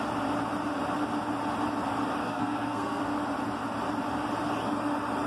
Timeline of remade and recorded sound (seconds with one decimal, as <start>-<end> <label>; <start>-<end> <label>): 0.0-2.2 recorded; 2.2-3.0 remade; 3.0-5.3 recorded